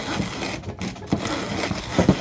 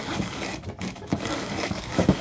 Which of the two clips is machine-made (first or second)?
second